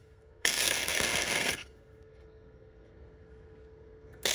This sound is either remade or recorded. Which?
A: remade